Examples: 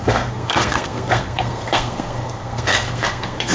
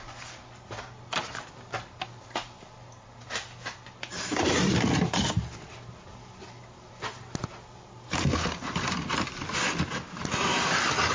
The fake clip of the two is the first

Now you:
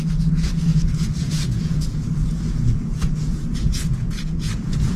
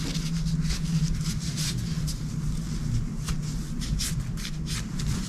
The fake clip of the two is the first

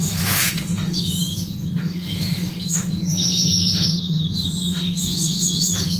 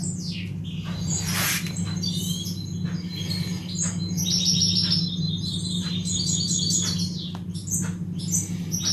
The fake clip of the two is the first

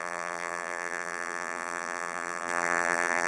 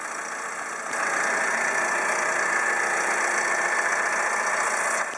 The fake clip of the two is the first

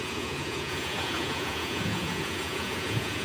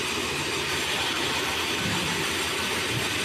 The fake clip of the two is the first